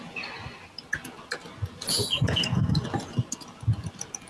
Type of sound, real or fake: real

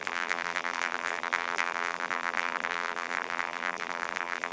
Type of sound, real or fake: fake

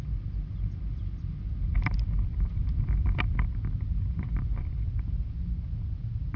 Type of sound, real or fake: real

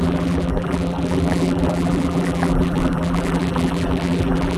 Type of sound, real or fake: fake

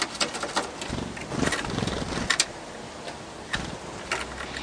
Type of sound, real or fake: real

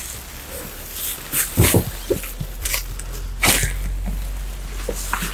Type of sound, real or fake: real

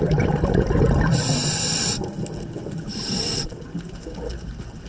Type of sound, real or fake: real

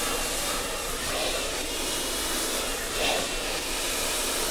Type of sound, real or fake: real